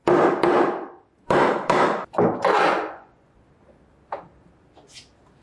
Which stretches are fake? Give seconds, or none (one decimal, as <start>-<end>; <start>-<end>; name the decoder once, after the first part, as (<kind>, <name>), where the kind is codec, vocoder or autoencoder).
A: 2.5-3.4 (vocoder, Vocos)